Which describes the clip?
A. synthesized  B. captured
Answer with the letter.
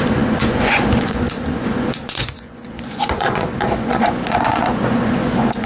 A